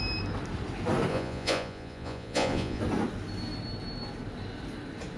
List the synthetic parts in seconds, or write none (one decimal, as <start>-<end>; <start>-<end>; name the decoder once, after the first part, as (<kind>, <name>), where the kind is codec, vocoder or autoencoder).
1.1-2.8 (vocoder, Vocos)